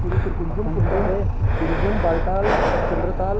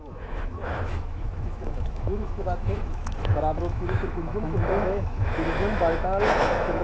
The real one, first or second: first